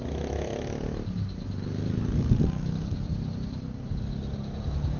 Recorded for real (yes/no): yes